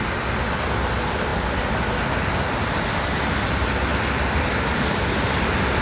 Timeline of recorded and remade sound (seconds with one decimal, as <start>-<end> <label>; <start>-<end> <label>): 0.0-5.8 recorded